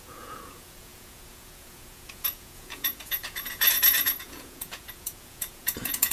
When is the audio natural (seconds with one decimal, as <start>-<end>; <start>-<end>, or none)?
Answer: none